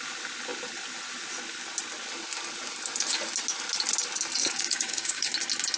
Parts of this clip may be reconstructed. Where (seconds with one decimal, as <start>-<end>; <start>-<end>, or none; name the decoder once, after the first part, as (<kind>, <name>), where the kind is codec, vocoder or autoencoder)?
4.4-5.3 (codec, DAC)